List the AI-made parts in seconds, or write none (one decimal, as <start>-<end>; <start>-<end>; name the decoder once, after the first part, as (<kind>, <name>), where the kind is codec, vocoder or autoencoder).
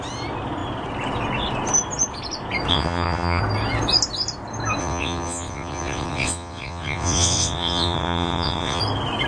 2.7-3.4 (vocoder, WaveNeXt); 4.8-8.8